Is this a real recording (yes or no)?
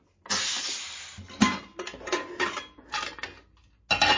yes